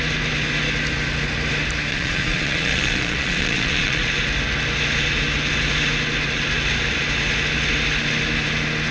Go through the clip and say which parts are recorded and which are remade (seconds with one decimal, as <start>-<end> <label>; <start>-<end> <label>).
0.0-1.9 recorded; 1.9-4.1 remade; 4.1-8.9 recorded